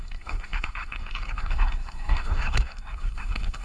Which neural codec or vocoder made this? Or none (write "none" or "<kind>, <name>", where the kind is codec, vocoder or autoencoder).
codec, SNAC